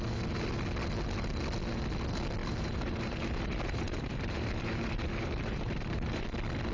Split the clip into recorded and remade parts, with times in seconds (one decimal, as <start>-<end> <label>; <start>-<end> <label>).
0.0-2.4 recorded; 2.4-6.2 remade; 6.2-6.7 recorded